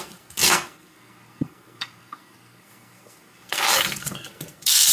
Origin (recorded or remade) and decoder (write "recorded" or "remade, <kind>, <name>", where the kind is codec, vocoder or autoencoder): remade, codec, SNAC